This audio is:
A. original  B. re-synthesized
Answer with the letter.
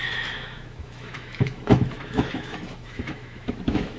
B